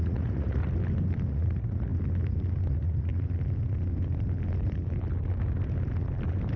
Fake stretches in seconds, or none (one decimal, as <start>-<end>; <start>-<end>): 0.0-0.6; 1.3-1.9; 2.7-3.1